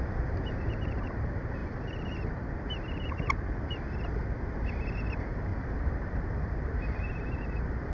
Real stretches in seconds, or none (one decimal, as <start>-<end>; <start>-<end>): 1.6-4.7